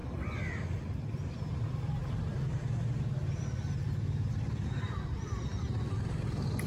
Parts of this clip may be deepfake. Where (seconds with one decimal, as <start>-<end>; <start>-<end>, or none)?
none